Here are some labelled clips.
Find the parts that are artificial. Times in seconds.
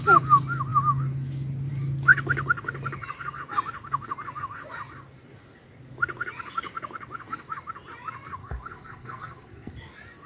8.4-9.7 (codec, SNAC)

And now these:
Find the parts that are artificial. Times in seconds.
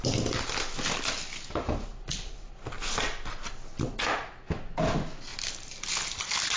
none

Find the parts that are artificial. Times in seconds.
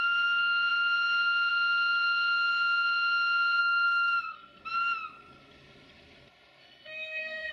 3.6-4.6 (codec, SNAC); 6.6-7.5